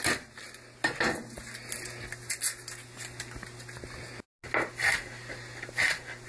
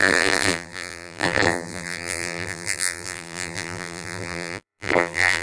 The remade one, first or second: second